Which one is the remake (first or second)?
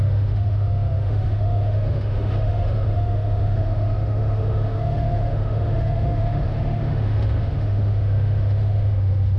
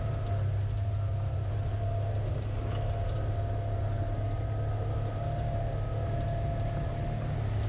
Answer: first